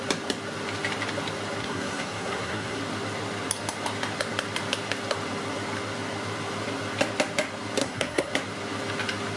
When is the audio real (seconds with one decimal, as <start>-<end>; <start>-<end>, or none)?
0.0-1.6; 2.8-7.8; 8.3-9.4